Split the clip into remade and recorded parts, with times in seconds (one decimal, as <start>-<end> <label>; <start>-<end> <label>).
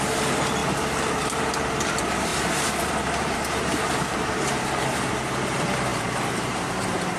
0.0-7.2 remade